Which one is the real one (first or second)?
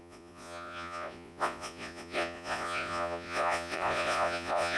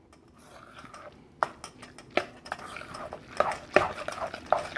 second